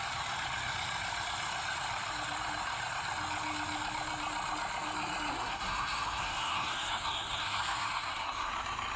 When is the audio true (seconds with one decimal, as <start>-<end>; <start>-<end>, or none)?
0.0-5.3; 8.5-9.0